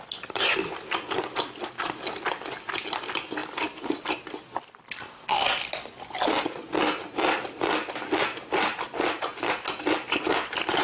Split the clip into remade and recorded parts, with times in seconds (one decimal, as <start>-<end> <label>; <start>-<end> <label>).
0.0-10.8 recorded